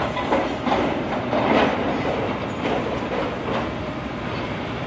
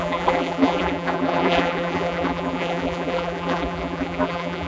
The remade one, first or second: second